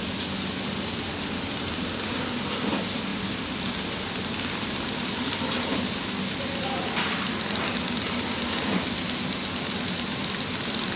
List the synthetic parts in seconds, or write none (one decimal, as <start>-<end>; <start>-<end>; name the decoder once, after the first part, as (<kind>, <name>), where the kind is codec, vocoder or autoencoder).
3.1-5.1 (vocoder, BigVGAN v2)